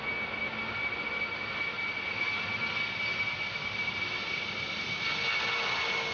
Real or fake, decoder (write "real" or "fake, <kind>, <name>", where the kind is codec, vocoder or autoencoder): real